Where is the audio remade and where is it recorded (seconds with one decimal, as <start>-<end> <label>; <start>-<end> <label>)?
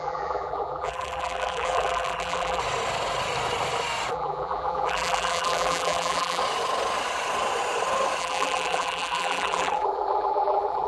0.0-2.6 remade; 2.6-4.1 recorded; 4.1-6.4 remade; 6.4-8.2 recorded; 8.2-10.9 remade